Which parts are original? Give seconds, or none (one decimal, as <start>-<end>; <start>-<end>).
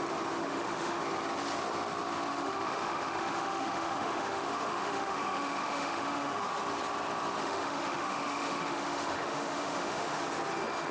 0.0-0.4; 1.0-2.3; 6.5-7.4; 10.2-10.9